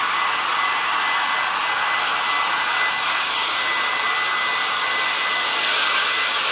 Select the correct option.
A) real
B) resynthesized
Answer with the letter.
A